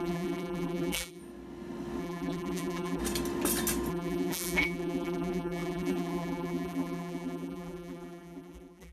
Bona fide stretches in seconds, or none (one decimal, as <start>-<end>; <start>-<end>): 1.2-2.0; 3.0-3.9